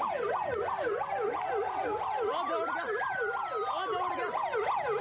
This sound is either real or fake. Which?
real